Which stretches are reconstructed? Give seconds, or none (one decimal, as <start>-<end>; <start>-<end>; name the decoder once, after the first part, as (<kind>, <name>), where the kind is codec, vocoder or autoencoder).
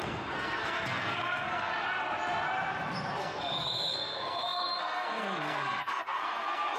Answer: 0.0-1.7 (codec, SNAC); 3.2-6.8